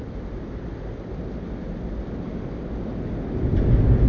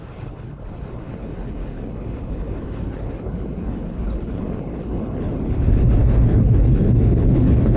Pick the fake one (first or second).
second